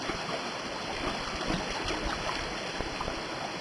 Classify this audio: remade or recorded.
recorded